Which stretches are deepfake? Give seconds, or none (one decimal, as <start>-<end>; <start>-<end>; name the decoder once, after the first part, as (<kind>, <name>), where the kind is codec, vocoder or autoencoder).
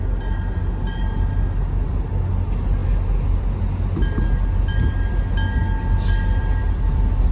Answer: none